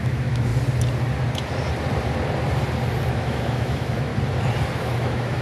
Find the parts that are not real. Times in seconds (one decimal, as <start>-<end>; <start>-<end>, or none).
0.0-0.5; 3.1-4.1; 4.8-5.4